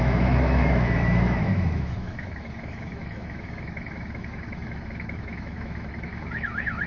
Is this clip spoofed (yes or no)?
yes